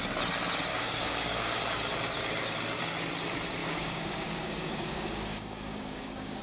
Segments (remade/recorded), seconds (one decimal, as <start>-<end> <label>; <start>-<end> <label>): 0.0-0.7 recorded; 0.7-1.6 remade; 1.6-3.6 recorded; 3.6-6.4 remade